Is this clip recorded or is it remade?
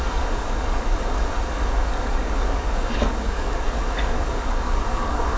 remade